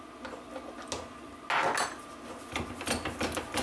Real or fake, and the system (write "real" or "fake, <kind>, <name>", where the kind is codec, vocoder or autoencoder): real